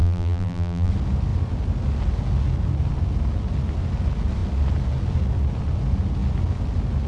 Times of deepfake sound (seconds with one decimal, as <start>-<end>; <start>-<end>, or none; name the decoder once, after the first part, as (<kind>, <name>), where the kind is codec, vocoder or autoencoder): 0.0-0.9 (vocoder, BigVGAN v2)